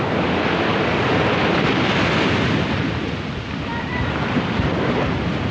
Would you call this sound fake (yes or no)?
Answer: no